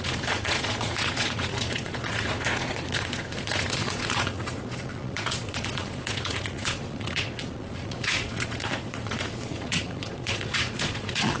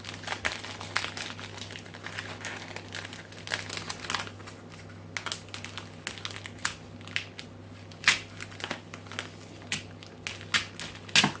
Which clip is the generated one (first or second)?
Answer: first